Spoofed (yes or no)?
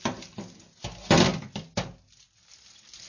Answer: no